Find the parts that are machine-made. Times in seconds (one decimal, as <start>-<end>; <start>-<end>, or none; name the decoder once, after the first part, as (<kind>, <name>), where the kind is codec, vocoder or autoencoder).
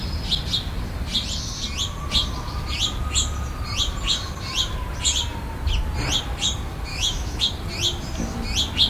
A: 6.9-7.4 (autoencoder, DAC-VAE)